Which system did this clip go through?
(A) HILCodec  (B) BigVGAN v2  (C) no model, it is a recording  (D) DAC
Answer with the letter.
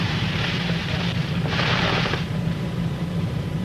B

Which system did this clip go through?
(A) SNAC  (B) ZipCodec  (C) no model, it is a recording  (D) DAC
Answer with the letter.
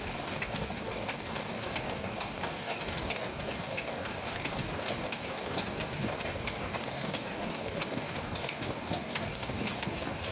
D